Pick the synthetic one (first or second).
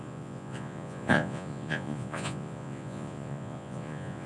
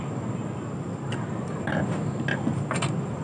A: first